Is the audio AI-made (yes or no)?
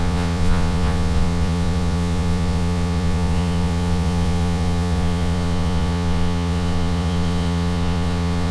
yes